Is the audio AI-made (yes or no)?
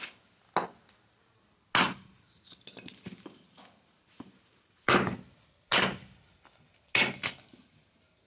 no